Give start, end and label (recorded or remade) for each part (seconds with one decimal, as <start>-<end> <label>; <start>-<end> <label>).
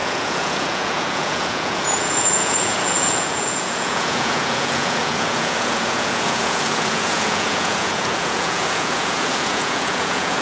0.0-10.4 remade